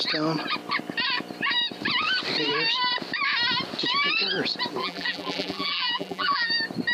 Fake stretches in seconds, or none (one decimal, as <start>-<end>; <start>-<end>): 4.8-6.5